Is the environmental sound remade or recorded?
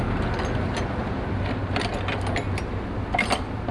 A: recorded